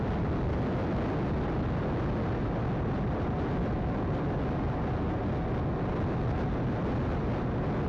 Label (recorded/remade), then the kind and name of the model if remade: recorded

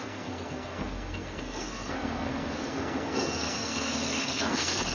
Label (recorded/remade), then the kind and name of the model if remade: remade, codec, SNAC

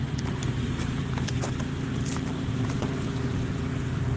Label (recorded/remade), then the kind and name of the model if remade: remade, vocoder, BigVGAN v2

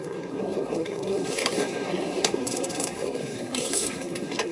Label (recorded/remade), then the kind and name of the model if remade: remade, codec, SNAC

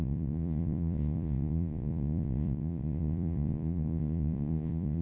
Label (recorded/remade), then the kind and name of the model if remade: remade, vocoder, Vocos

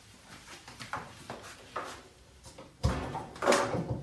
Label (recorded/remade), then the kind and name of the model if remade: remade, vocoder, BigVGAN v2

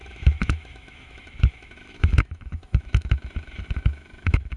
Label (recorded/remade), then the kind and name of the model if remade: remade, autoencoder, DAC-VAE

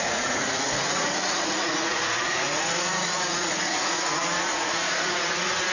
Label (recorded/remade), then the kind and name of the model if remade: remade, vocoder, Vocos